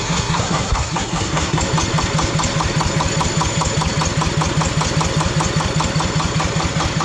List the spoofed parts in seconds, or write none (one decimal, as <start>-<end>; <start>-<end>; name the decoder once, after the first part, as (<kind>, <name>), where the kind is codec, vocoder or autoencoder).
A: 0.0-1.6 (codec, SNAC)